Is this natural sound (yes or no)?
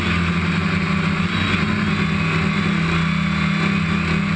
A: yes